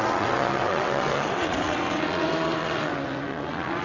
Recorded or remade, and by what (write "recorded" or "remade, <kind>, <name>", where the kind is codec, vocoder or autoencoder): remade, vocoder, WaveNeXt